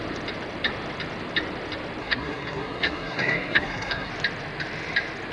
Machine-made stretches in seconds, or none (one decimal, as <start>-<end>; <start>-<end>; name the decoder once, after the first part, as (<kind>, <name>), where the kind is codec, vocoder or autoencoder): 2.0-4.1 (codec, SNAC)